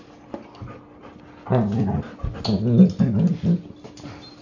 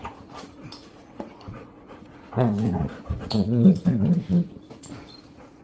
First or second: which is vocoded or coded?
second